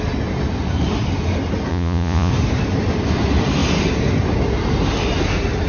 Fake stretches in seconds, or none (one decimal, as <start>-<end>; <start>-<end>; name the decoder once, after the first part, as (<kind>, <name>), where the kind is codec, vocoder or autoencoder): 1.7-2.3 (vocoder, Vocos)